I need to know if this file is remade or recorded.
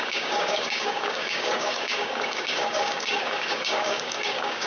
remade